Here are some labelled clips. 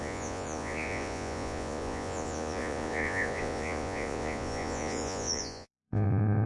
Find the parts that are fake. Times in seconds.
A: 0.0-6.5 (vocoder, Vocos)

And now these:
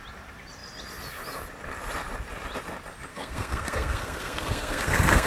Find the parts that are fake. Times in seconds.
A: 3.1-5.3 (codec, SNAC)